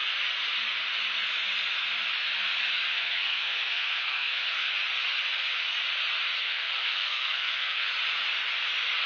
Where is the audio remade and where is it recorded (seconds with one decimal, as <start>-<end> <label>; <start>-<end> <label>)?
0.0-2.9 recorded; 2.9-4.7 remade; 4.7-6.4 recorded; 6.4-7.9 remade; 7.9-9.1 recorded

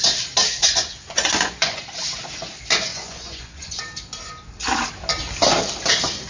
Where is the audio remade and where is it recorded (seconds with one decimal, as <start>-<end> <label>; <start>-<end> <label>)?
0.0-0.6 recorded; 0.6-1.8 remade; 1.8-2.9 recorded; 2.9-3.7 remade; 3.7-6.3 recorded

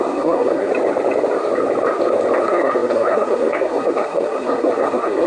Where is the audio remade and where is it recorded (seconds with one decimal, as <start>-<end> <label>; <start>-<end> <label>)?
0.0-0.7 remade; 0.7-2.4 recorded; 2.4-5.3 remade

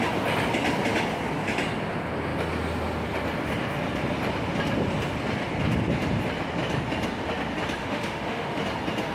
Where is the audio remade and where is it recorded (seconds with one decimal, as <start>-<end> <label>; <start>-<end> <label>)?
0.0-7.8 recorded; 7.8-8.6 remade; 8.6-9.1 recorded

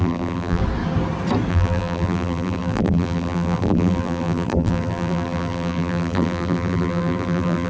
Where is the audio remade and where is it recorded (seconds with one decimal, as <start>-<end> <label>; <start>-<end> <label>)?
0.0-0.6 remade; 0.6-1.5 recorded; 1.5-7.7 remade

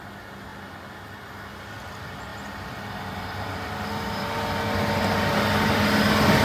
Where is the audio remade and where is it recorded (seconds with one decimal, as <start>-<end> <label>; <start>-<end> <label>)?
0.0-6.4 recorded